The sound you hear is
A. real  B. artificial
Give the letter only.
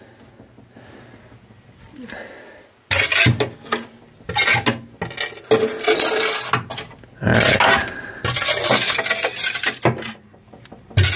A